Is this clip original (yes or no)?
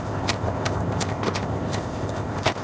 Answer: no